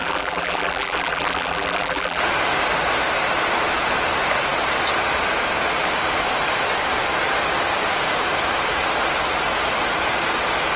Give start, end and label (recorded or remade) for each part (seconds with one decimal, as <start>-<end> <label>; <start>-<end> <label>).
0.0-2.2 remade; 2.2-10.8 recorded